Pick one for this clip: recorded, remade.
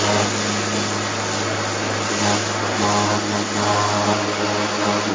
recorded